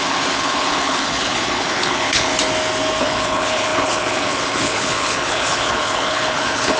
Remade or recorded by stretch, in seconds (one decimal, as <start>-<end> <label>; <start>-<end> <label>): 0.0-2.3 remade; 2.3-3.0 recorded; 3.0-6.8 remade